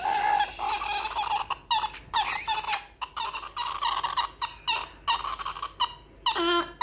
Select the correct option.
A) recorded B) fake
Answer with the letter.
A